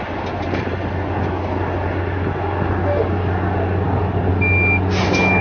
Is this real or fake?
real